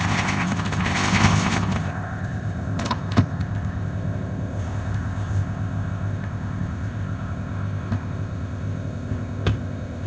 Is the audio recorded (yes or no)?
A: no